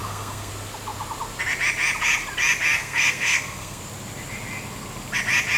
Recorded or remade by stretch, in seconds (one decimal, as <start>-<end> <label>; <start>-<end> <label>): 0.0-0.5 remade; 0.5-2.8 recorded; 2.8-3.8 remade; 3.8-5.6 recorded